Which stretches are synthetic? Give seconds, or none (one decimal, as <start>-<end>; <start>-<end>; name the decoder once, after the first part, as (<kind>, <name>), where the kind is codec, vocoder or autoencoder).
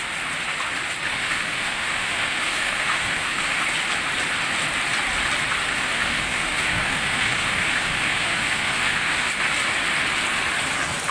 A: 1.1-3.6 (autoencoder, DAC-VAE); 5.6-9.3